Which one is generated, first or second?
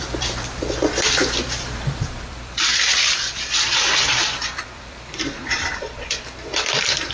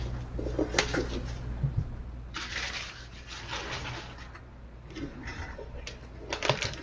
first